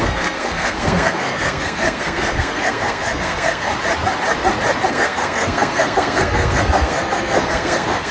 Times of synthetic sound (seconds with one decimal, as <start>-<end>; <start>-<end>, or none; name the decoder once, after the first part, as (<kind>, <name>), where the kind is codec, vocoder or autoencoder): 0.0-3.7 (codec, SNAC); 4.9-8.1